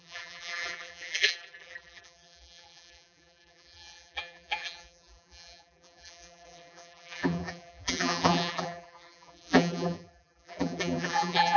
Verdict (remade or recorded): remade